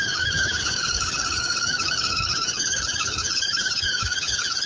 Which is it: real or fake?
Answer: fake